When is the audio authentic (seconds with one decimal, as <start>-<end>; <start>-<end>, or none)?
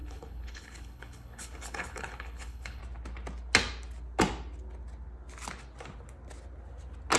2.8-7.2